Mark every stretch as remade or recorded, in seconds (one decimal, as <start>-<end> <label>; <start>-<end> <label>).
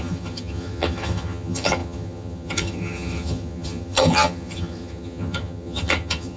0.0-6.4 remade